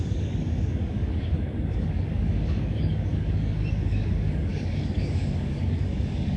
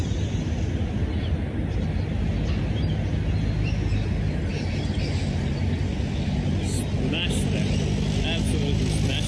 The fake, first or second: first